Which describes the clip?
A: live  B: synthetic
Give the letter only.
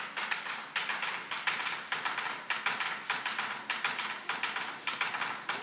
A